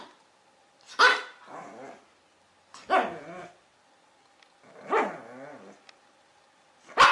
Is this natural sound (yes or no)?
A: yes